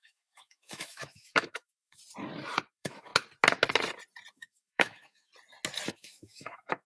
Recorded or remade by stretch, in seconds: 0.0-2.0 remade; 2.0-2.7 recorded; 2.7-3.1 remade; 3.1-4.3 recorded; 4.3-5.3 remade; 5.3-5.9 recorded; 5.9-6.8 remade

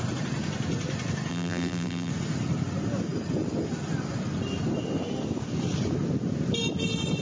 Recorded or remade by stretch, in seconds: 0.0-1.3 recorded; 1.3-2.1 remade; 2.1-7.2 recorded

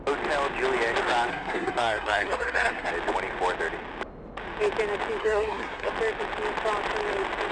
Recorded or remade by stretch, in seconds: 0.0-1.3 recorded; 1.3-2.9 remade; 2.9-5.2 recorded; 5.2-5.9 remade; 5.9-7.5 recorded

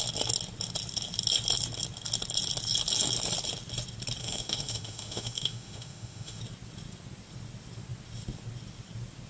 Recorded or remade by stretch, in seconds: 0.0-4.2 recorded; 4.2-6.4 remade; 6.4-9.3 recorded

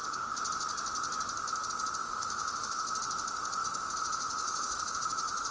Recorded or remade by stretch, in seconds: 0.0-2.0 recorded; 2.0-2.8 remade; 2.8-3.6 recorded; 3.6-5.5 remade

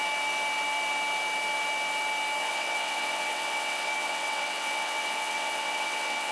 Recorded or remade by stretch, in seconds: 0.0-2.4 recorded; 2.4-6.3 remade